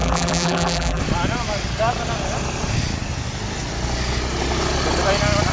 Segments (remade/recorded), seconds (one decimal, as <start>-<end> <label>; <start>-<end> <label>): 0.0-1.0 remade; 1.0-5.5 recorded

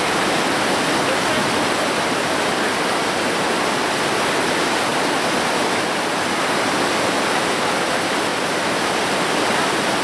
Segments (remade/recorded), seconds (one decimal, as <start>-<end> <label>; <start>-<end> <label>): 0.0-1.4 recorded; 1.4-2.5 remade; 2.5-4.9 recorded; 4.9-5.5 remade; 5.5-8.3 recorded; 8.3-9.5 remade; 9.5-10.0 recorded

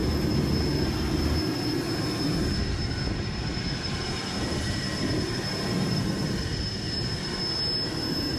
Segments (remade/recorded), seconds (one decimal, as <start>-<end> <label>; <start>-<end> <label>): 0.0-3.5 recorded; 3.5-7.4 remade; 7.4-8.4 recorded